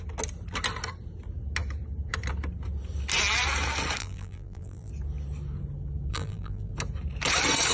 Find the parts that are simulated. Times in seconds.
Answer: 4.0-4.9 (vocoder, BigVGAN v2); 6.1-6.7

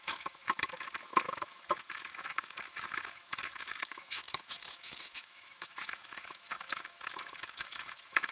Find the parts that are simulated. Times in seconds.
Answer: 0.0-8.3 (autoencoder, DAC-VAE)

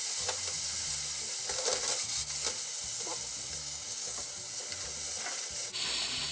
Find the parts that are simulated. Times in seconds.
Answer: 3.6-4.3 (codec, DAC)

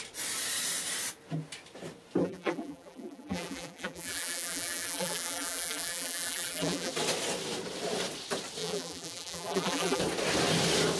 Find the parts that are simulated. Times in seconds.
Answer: 2.2-6.9 (vocoder, BigVGAN v2); 8.6-10.0